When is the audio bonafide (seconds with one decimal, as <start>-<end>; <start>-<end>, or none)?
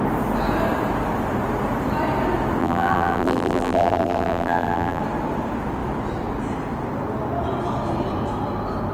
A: 0.0-2.6; 5.0-8.9